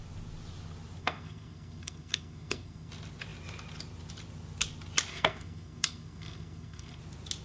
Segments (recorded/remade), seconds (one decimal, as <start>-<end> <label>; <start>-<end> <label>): 0.0-1.0 recorded; 1.0-2.9 remade; 2.9-5.1 recorded; 5.1-7.0 remade; 7.0-7.4 recorded